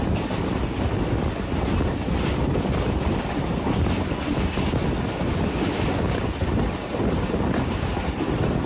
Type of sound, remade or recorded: recorded